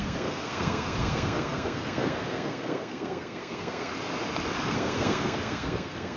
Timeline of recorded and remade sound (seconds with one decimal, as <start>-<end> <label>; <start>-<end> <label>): 0.0-3.9 remade; 3.9-4.7 recorded; 4.7-6.2 remade